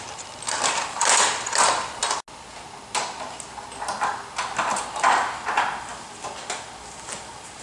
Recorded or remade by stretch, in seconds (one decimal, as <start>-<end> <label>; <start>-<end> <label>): 0.0-7.6 recorded